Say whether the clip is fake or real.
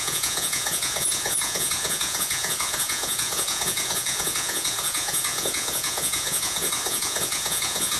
fake